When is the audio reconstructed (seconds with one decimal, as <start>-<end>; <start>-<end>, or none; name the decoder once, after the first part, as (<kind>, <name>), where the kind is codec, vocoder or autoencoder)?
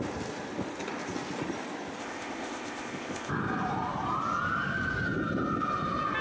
2.0-3.3 (codec, ZipCodec)